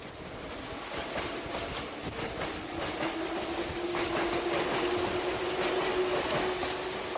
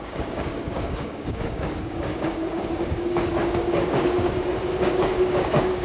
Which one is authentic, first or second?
first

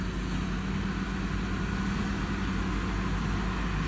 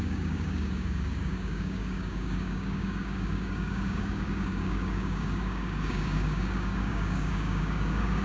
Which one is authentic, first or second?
first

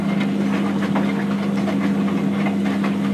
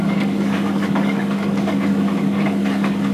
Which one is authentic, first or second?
first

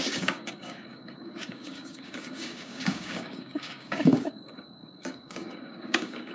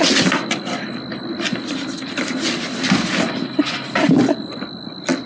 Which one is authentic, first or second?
second